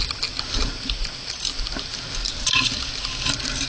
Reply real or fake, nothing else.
real